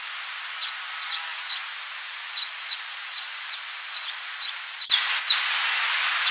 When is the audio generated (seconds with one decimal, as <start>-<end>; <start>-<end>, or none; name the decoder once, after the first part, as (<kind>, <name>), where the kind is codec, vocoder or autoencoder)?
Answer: 1.3-5.1 (vocoder, Vocos)